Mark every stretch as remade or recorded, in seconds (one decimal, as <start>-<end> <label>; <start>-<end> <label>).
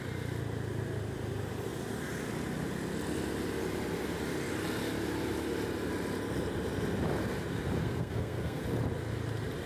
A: 0.0-7.8 recorded; 7.8-8.6 remade; 8.6-9.7 recorded